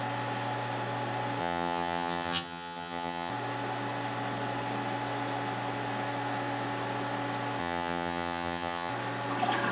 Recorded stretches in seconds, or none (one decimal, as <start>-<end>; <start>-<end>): 0.0-1.4; 3.3-7.6; 8.9-9.7